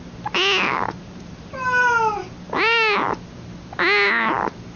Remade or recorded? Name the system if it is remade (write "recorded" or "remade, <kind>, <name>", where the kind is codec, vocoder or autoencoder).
recorded